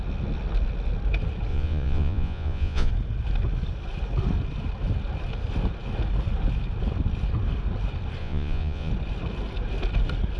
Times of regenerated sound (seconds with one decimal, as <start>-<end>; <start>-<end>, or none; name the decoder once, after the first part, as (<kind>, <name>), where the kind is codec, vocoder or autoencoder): 1.5-2.9 (vocoder, Vocos); 8.2-8.9